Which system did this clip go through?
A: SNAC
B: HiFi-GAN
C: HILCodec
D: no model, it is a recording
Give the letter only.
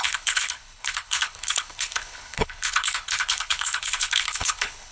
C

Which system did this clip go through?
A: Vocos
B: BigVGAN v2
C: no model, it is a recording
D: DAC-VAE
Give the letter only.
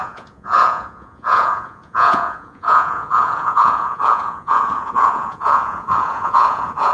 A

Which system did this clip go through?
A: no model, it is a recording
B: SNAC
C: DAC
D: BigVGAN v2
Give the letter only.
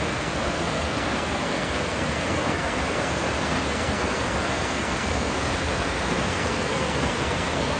B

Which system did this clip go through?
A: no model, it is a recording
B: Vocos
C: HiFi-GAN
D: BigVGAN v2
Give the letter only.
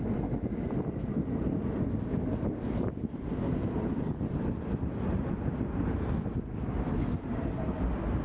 A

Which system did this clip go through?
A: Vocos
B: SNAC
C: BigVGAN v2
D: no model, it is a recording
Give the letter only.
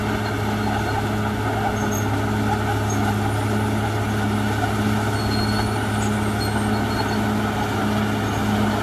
D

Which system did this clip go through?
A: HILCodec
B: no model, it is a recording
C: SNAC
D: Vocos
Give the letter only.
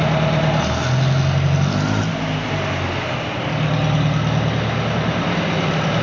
B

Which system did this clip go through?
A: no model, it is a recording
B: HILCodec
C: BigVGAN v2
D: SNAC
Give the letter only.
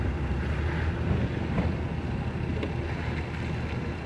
A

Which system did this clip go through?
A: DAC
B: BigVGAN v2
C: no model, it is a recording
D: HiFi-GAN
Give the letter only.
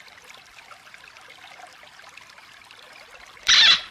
B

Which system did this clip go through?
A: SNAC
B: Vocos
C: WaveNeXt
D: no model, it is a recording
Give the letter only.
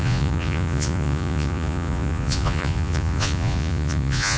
B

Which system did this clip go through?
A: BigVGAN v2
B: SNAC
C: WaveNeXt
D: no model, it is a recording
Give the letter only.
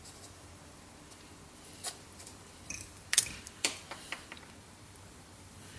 A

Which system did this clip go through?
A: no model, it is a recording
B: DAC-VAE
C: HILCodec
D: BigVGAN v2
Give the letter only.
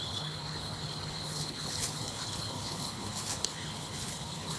C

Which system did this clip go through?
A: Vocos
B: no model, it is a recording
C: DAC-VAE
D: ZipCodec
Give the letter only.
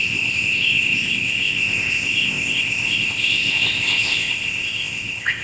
D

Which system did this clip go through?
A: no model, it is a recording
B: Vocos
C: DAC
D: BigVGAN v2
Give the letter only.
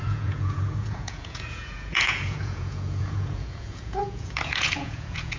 B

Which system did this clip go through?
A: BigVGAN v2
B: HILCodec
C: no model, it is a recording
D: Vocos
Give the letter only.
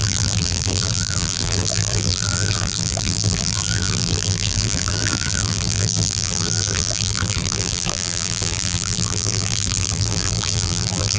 A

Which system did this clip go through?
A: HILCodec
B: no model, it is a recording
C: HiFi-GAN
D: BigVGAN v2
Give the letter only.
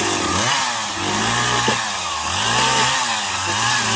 B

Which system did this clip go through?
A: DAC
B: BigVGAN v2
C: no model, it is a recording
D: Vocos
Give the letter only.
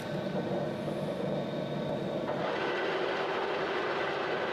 C